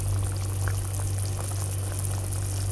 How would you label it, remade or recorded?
recorded